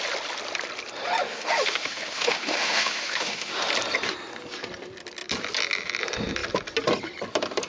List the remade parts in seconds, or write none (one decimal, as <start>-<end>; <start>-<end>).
1.2-3.7